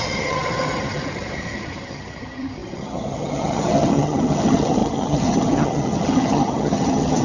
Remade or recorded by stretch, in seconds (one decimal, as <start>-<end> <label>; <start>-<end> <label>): 0.0-7.2 remade